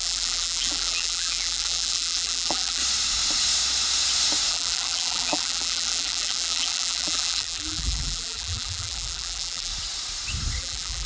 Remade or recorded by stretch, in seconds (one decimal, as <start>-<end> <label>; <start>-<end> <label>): 0.0-2.8 remade; 2.8-4.5 recorded; 4.5-9.7 remade; 9.7-10.6 recorded; 10.6-11.1 remade